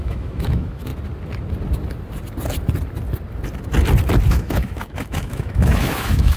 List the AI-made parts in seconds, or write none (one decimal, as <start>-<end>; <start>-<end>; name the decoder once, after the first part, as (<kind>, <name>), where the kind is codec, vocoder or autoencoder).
0.0-0.9 (autoencoder, DAC-VAE); 4.3-6.4